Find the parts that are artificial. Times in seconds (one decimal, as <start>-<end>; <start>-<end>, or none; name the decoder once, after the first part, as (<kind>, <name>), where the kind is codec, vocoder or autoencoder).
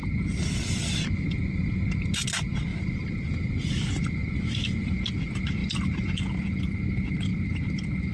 2.7-3.5 (vocoder, BigVGAN v2); 5.6-6.6; 7.3-8.1